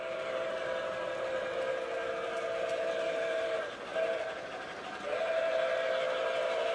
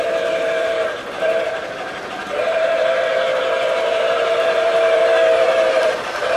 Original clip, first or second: first